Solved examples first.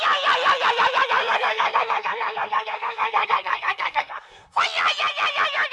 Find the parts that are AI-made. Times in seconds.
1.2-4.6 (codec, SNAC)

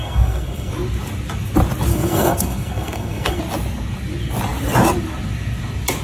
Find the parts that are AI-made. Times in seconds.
0.0-0.7 (codec, SNAC); 1.9-3.4

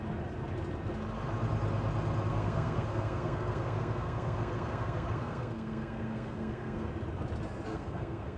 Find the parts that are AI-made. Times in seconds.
2.3-6.9 (codec, SNAC); 7.7-8.4